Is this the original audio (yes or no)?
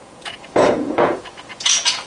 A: no